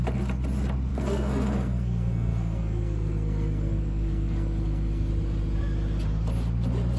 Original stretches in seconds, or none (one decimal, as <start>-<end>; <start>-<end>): 0.0-0.9; 5.1-7.0